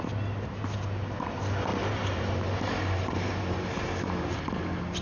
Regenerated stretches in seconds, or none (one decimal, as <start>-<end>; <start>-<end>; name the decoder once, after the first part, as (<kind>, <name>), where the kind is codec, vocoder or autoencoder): 1.7-4.4 (vocoder, BigVGAN v2)